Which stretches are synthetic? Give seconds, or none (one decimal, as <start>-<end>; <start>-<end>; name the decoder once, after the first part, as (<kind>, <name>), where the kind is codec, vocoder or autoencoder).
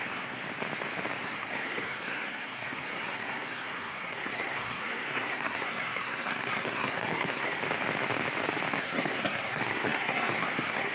0.0-0.4 (codec, SNAC); 1.2-7.6; 8.8-10.9